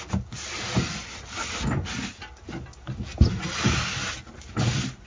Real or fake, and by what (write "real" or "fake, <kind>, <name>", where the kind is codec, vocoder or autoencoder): real